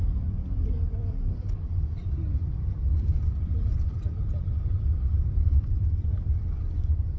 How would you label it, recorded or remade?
remade